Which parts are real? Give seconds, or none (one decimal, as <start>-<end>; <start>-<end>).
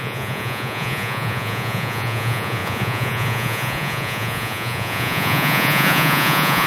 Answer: none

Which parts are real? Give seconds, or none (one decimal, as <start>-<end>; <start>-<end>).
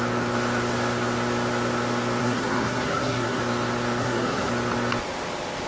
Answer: 0.0-2.2; 3.4-4.0; 4.5-5.7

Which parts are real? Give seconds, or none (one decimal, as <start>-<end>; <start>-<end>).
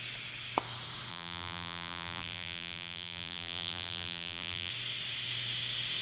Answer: 0.0-1.1; 4.7-6.0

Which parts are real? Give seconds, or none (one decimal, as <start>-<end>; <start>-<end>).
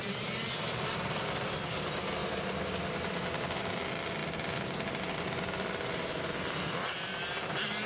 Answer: 2.2-3.6